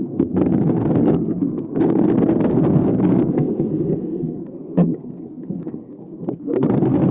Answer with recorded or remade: remade